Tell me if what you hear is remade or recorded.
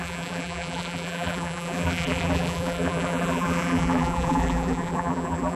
remade